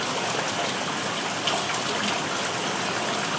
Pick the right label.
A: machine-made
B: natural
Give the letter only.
B